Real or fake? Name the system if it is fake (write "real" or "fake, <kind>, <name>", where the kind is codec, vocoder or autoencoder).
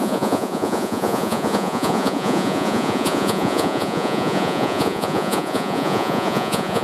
fake, vocoder, Vocos